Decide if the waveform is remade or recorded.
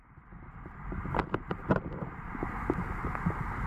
recorded